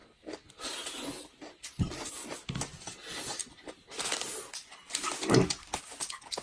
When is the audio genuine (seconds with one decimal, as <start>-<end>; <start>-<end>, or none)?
3.4-6.0